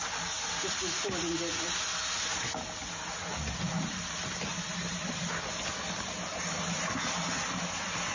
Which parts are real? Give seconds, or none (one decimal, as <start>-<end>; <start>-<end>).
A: 0.0-4.5; 5.3-8.1